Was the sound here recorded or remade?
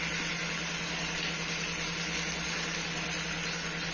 recorded